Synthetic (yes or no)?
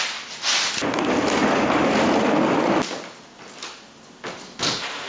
no